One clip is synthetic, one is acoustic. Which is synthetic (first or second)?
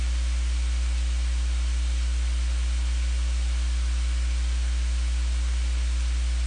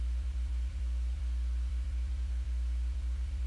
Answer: second